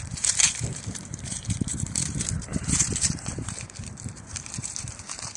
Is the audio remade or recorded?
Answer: remade